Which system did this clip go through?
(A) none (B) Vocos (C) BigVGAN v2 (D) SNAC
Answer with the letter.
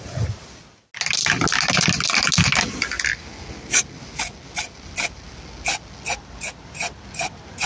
A